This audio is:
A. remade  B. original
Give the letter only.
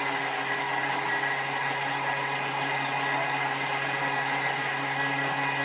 B